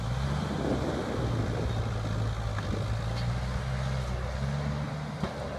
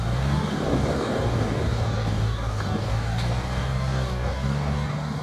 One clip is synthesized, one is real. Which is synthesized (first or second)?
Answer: second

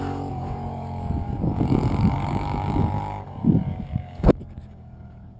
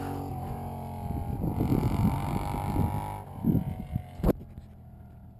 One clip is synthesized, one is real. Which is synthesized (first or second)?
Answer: first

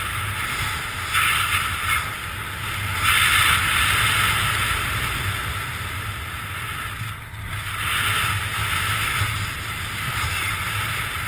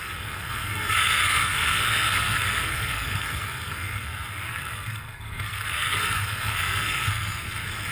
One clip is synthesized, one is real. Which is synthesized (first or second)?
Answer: second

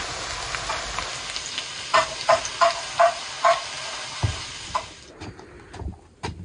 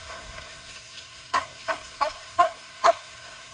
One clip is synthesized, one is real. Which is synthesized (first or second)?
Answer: second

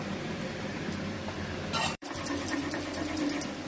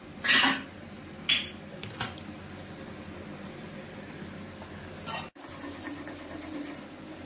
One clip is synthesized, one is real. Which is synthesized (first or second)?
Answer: first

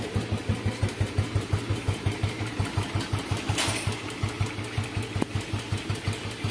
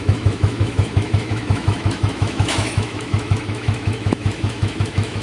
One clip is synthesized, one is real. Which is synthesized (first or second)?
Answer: second